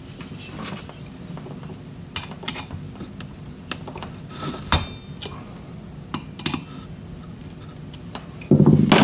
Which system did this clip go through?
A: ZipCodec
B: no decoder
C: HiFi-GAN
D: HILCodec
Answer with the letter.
B